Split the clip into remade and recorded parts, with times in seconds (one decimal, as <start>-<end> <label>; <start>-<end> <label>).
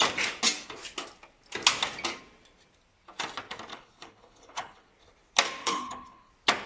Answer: 0.0-3.7 recorded; 3.7-4.9 remade; 4.9-5.6 recorded; 5.6-6.3 remade; 6.3-6.7 recorded